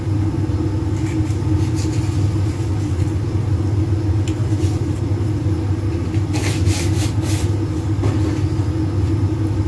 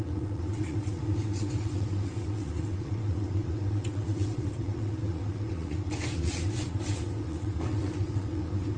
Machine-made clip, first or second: second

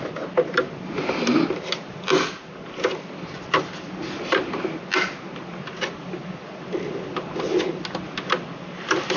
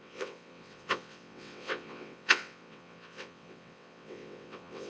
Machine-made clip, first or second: second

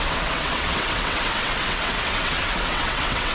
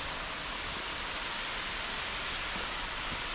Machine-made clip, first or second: first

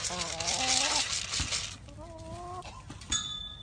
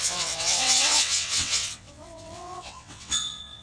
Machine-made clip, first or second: second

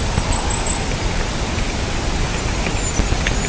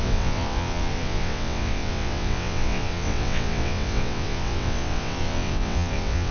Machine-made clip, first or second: second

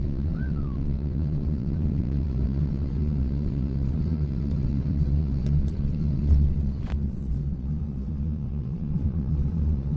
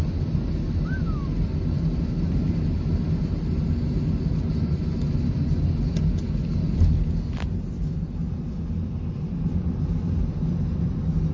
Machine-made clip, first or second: first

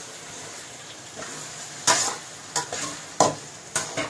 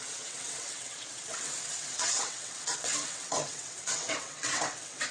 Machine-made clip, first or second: second